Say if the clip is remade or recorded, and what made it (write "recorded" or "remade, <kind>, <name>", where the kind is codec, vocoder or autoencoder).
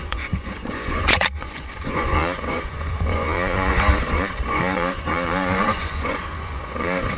remade, vocoder, Vocos